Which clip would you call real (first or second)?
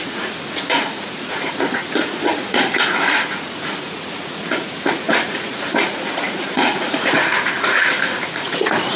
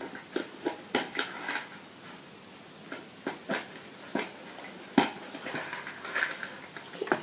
second